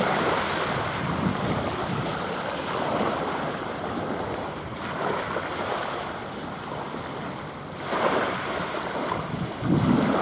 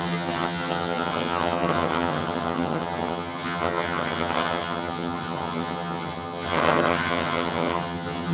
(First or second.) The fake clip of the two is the second